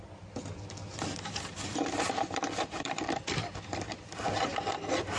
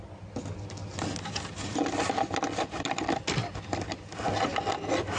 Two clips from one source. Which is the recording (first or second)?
second